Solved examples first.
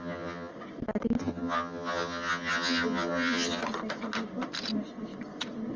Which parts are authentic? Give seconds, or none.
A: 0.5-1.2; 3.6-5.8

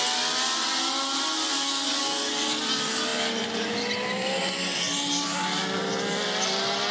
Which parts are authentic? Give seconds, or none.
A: 0.0-6.9

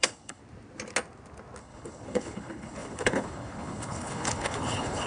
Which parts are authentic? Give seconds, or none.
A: 0.4-1.6

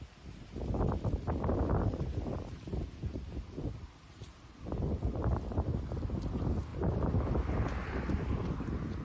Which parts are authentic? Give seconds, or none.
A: 0.0-9.0

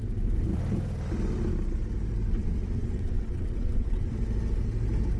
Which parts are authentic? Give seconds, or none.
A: 0.0-2.4; 4.1-5.2

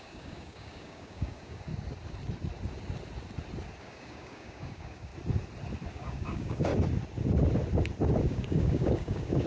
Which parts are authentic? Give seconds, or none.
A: 1.7-3.8; 5.1-5.9; 6.7-8.2

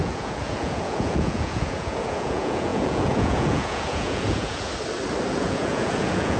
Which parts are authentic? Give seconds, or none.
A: 4.7-5.3

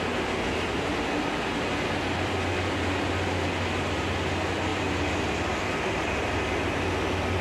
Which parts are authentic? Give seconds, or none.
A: 0.0-7.4